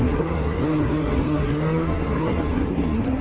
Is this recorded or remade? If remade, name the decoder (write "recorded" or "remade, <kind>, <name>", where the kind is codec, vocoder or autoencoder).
remade, codec, SNAC